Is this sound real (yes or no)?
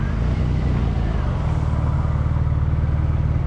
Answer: yes